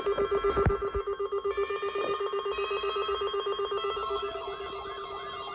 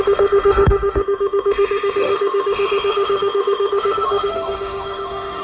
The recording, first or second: first